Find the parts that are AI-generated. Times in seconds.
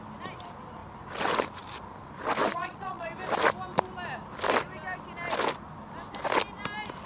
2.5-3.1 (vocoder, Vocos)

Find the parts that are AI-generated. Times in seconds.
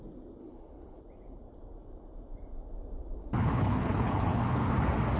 0.4-1.0 (codec, HILCodec); 3.2-4.7